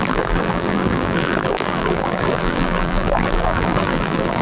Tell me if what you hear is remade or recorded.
remade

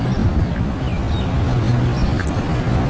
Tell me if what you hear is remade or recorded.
recorded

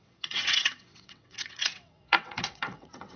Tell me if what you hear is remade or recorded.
remade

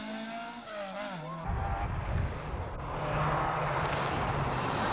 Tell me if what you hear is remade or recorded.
recorded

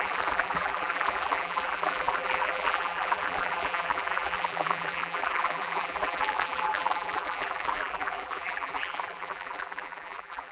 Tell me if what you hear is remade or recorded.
remade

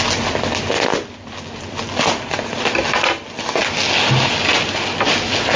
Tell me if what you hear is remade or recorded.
recorded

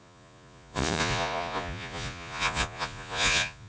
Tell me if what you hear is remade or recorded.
remade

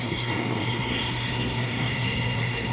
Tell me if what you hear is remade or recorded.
remade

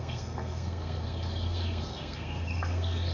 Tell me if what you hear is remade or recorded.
remade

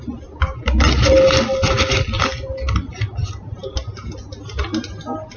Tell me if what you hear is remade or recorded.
recorded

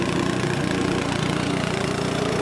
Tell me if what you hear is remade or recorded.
remade